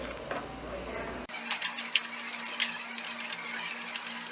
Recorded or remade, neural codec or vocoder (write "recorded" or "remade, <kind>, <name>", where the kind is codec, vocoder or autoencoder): recorded